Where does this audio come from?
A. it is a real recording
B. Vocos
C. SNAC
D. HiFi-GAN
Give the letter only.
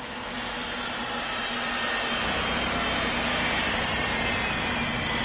A